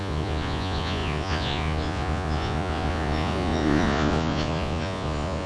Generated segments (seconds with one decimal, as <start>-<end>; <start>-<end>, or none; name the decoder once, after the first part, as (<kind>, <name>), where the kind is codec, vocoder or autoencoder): 0.0-5.5 (vocoder, Vocos)